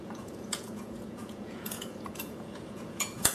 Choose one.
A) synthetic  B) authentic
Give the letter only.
A